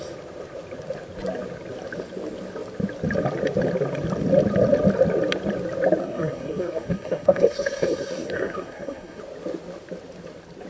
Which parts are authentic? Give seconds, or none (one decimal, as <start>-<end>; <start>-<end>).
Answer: 0.0-6.0; 9.2-10.7